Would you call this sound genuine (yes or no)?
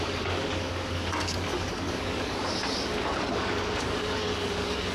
no